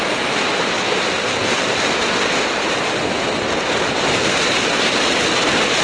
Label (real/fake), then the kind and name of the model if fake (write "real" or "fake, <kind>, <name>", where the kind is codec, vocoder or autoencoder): real